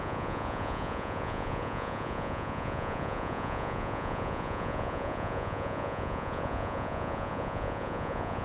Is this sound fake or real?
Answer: fake